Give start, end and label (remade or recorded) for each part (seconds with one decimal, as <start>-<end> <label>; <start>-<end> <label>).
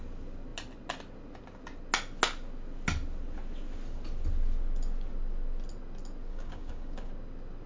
0.0-6.3 recorded; 6.3-7.1 remade; 7.1-7.7 recorded